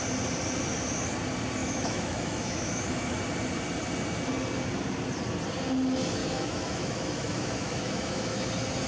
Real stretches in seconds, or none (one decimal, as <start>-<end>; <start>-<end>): 0.0-1.6; 3.2-6.2; 8.5-8.9